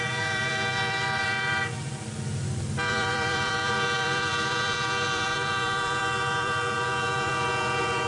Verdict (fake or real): fake